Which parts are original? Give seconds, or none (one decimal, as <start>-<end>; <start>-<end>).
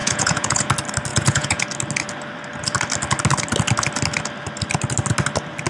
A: 0.7-1.1; 1.6-5.7